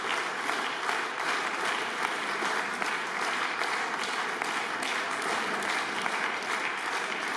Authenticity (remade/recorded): recorded